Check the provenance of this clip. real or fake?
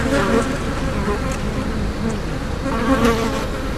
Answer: real